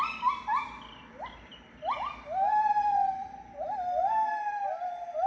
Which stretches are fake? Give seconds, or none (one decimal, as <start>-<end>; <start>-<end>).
none